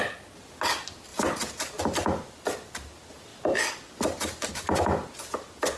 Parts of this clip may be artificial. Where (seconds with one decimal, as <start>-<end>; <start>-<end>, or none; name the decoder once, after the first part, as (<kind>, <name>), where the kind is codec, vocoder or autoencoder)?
none